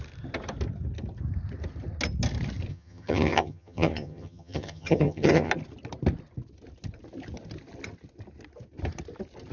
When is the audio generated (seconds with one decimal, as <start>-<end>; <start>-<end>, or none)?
2.7-5.5